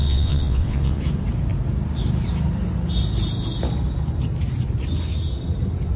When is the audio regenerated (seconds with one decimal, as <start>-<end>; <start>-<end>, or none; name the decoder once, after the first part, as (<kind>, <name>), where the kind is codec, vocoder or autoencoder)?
0.0-1.0 (vocoder, WaveNeXt)